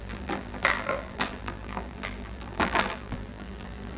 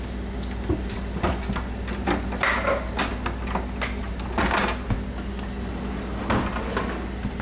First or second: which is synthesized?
first